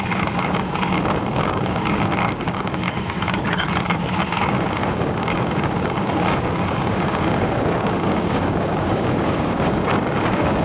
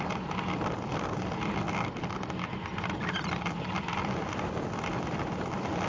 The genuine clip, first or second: second